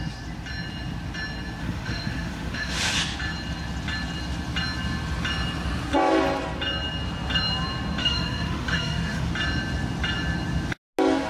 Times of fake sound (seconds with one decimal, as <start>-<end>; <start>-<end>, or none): 1.6-3.0; 8.0-9.3